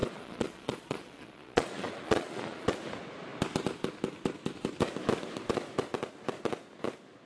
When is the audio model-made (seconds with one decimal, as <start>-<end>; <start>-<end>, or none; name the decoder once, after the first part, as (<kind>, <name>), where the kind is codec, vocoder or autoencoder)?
0.0-2.8 (vocoder, Vocos)